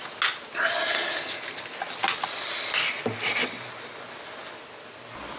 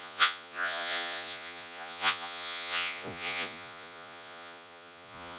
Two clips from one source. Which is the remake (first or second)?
second